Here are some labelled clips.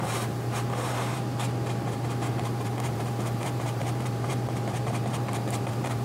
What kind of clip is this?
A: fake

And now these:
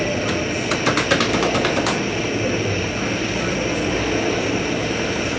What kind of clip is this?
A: real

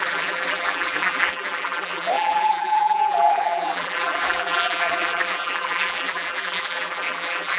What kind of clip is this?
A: fake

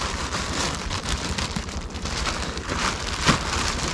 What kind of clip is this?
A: fake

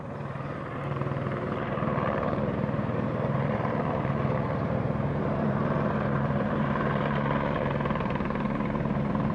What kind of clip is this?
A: fake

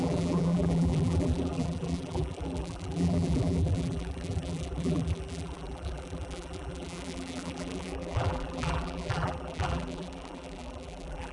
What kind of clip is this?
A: fake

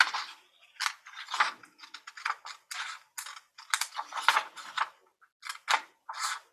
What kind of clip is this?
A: real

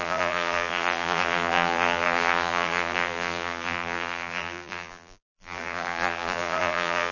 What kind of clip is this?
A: fake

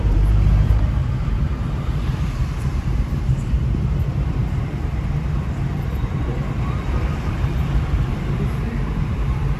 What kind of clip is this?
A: fake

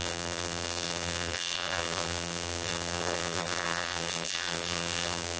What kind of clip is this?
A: fake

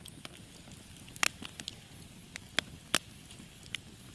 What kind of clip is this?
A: real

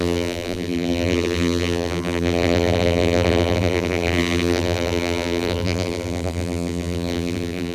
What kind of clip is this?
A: fake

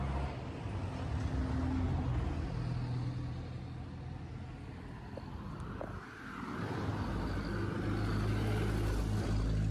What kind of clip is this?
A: real